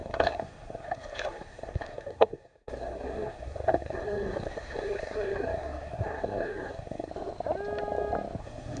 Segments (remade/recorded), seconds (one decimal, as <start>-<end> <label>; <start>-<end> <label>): 0.0-7.1 remade; 7.1-8.4 recorded; 8.4-8.8 remade